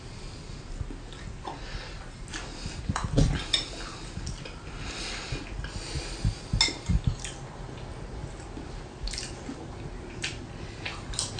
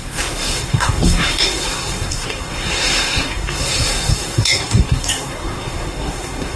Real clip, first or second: first